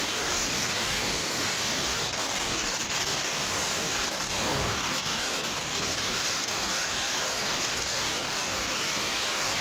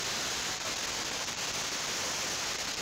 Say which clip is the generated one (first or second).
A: first